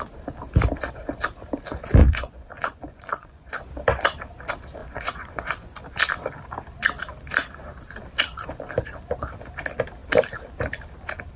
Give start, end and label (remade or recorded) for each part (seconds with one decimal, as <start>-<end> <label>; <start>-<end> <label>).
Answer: 0.0-2.0 recorded; 2.0-3.6 remade; 3.6-4.8 recorded; 4.8-5.8 remade; 5.8-11.4 recorded